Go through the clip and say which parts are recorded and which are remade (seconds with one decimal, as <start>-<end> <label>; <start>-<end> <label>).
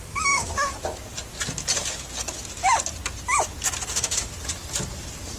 0.0-0.7 remade; 0.7-3.9 recorded; 3.9-4.3 remade; 4.3-5.4 recorded